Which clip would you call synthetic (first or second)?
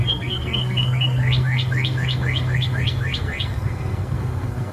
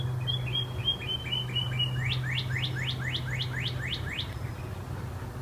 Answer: first